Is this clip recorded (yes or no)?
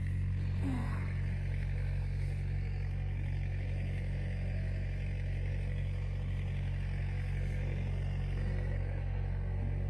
no